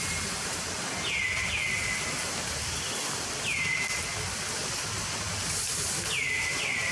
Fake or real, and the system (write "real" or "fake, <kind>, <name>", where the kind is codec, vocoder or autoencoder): real